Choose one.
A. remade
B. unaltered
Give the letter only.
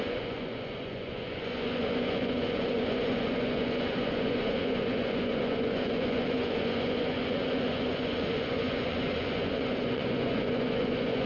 A